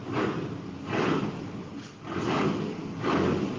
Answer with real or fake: real